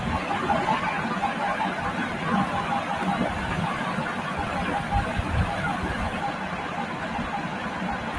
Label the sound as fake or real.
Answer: real